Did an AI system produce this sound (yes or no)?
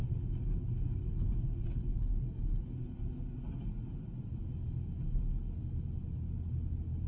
no